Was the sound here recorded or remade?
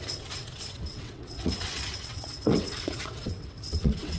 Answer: remade